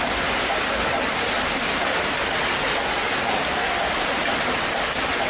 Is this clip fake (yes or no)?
no